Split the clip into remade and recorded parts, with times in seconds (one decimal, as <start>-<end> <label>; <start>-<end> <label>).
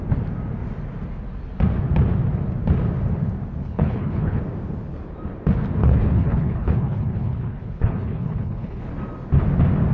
0.0-3.6 recorded; 3.6-4.4 remade; 4.4-5.8 recorded; 5.8-8.9 remade; 8.9-9.9 recorded